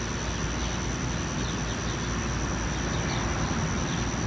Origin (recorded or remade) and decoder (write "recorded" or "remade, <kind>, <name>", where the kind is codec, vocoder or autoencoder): recorded